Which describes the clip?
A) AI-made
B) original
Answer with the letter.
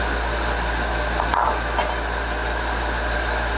B